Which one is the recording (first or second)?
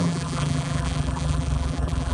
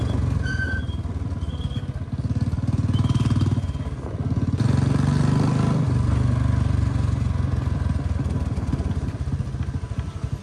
second